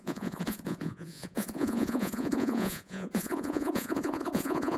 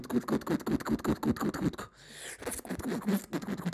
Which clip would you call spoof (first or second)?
first